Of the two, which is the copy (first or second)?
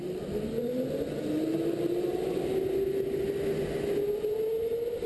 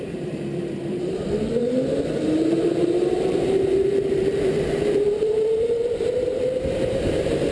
second